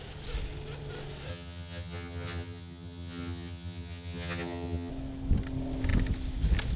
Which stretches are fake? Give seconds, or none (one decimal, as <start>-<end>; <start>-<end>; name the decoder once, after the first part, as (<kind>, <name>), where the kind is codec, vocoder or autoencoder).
1.3-4.9 (vocoder, HiFi-GAN)